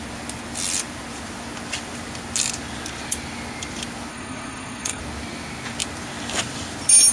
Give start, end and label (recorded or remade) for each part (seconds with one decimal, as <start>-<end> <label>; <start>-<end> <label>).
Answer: 0.0-4.1 recorded; 4.1-5.0 remade; 5.0-7.1 recorded